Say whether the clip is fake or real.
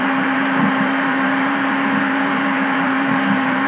fake